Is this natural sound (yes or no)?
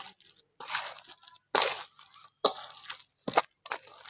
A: yes